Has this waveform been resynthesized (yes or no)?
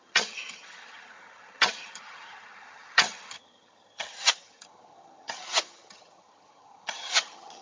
yes